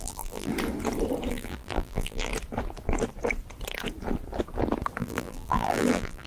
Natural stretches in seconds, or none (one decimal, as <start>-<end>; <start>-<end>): 0.5-1.3; 2.3-5.0